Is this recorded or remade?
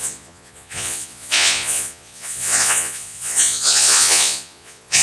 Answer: remade